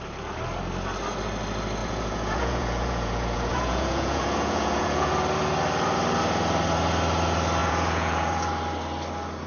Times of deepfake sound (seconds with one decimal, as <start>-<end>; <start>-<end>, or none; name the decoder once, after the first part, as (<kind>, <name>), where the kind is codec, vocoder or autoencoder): 1.8-5.1 (vocoder, Vocos); 7.6-8.5

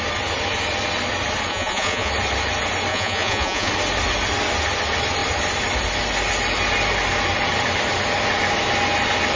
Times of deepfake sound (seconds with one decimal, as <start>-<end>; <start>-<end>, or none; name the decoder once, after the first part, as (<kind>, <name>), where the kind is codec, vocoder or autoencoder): 1.5-2.1 (vocoder, Vocos); 2.9-3.7

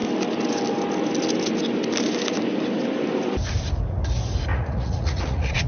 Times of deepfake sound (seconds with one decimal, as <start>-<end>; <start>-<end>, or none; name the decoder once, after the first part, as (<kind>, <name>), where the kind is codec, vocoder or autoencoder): 4.5-5.7 (vocoder, Vocos)

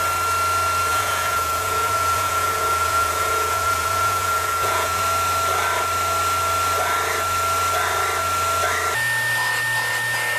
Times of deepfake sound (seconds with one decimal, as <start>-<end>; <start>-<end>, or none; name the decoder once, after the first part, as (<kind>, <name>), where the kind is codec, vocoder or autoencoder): 0.9-5.0 (vocoder, Vocos)